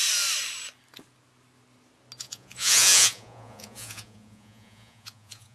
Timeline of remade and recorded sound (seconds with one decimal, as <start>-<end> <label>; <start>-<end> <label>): 0.0-2.2 recorded; 2.2-5.5 remade